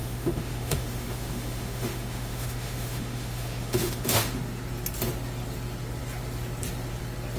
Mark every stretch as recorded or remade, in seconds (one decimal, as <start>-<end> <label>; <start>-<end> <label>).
0.0-4.4 remade; 4.4-7.4 recorded